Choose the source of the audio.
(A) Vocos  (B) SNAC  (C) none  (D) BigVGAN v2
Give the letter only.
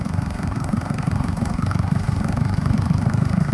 B